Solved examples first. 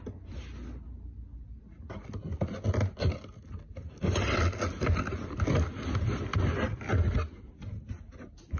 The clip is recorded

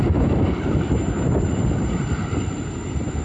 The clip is recorded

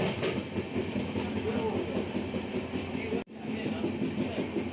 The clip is recorded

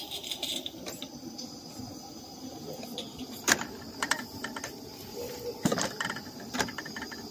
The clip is recorded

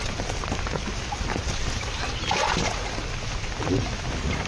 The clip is recorded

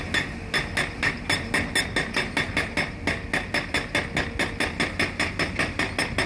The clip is recorded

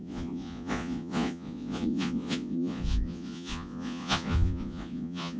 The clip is remade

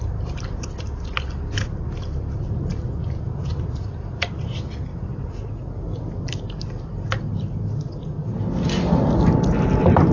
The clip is recorded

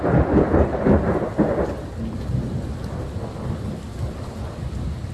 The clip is recorded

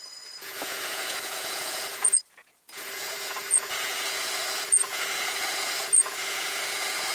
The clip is remade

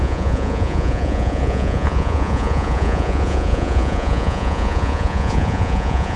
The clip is remade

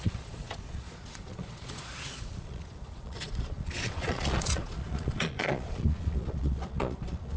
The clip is remade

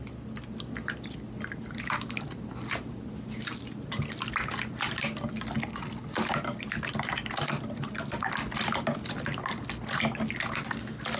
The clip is recorded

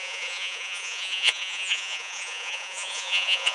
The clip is remade